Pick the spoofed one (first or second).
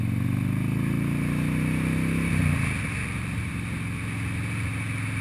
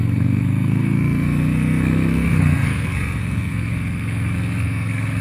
second